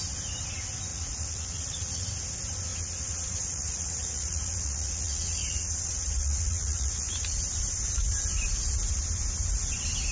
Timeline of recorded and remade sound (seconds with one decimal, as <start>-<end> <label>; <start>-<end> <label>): 0.0-0.9 recorded; 0.9-2.1 remade; 2.1-2.7 recorded; 2.7-7.4 remade; 7.4-10.1 recorded